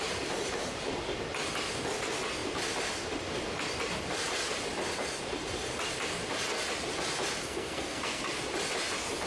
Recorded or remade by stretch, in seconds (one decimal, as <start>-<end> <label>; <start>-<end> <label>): 0.0-7.4 recorded; 7.4-8.4 remade; 8.4-9.3 recorded